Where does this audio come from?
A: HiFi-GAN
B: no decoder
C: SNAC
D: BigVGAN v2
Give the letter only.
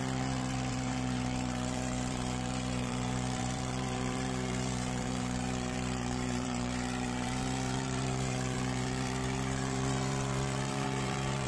D